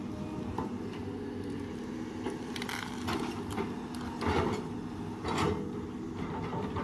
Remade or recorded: recorded